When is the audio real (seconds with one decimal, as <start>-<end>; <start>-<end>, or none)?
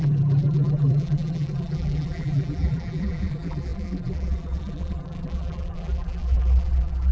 none